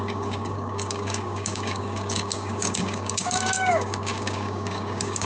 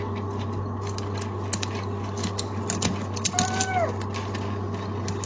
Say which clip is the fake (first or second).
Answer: first